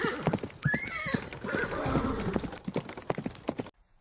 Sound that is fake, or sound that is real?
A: real